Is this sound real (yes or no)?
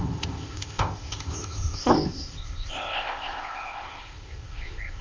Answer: no